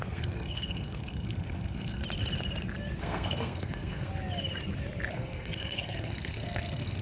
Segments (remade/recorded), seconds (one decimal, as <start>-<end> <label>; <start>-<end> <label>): 0.0-2.0 remade; 2.0-3.0 recorded; 3.0-4.1 remade; 4.1-5.1 recorded; 5.1-7.0 remade